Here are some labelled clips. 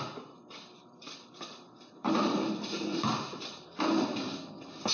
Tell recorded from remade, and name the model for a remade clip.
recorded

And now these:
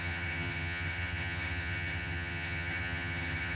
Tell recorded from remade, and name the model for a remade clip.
remade, vocoder, HiFi-GAN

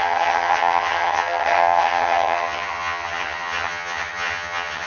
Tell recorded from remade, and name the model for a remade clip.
remade, vocoder, HiFi-GAN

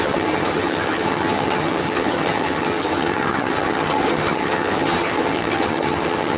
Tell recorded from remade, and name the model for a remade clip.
remade, vocoder, HiFi-GAN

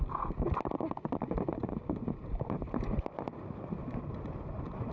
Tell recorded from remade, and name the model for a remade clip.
recorded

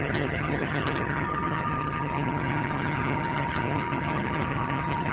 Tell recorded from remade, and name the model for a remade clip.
remade, vocoder, HiFi-GAN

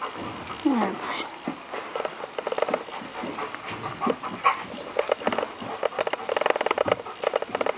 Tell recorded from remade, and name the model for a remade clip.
recorded